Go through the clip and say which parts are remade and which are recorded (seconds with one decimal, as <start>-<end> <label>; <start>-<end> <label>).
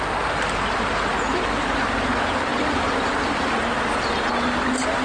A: 0.0-5.0 recorded